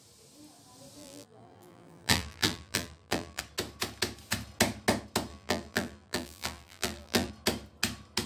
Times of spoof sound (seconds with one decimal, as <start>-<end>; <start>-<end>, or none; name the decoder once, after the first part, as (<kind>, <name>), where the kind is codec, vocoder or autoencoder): 1.0-3.4 (vocoder, BigVGAN v2); 5.3-7.3